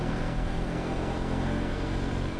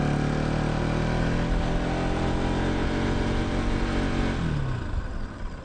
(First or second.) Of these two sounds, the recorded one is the second